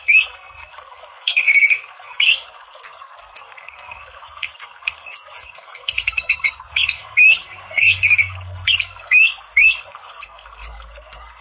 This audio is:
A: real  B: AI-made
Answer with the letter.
B